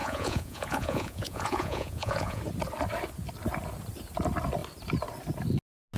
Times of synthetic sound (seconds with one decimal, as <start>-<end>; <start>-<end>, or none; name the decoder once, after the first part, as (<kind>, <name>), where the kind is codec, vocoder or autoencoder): 0.0-2.4 (vocoder, Vocos)